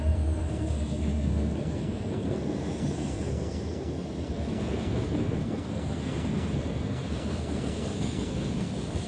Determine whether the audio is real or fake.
fake